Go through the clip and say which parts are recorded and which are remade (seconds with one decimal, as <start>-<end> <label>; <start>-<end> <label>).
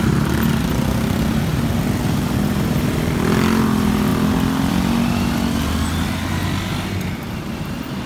0.0-8.1 recorded